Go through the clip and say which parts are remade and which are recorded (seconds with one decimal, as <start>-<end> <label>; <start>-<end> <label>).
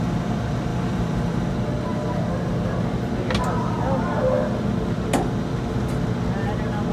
0.0-0.7 recorded; 0.7-1.5 remade; 1.5-6.9 recorded